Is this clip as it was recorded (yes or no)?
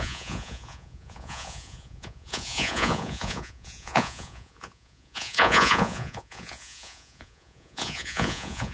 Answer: no